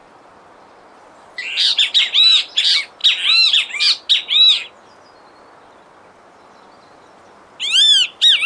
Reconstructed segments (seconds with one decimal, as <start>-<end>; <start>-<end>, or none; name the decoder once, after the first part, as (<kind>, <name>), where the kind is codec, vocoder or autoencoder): 0.0-2.6 (vocoder, BigVGAN v2)